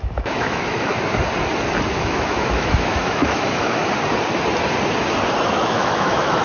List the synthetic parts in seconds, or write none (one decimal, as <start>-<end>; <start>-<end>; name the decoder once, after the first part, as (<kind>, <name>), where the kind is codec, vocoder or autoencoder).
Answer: 0.0-0.9 (autoencoder, DAC-VAE); 1.9-3.8; 5.5-6.4